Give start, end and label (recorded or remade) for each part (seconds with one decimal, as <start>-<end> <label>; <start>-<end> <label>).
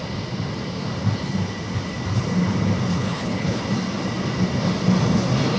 0.0-2.9 recorded; 2.9-3.6 remade; 3.6-5.6 recorded